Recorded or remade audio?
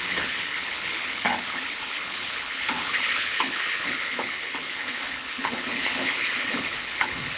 remade